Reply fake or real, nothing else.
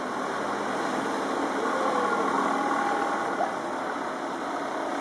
real